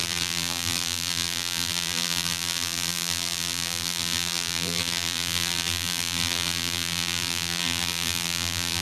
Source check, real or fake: fake